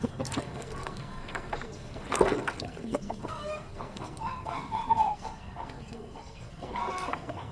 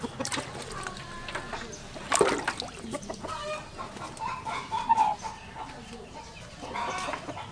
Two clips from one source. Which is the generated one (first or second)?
first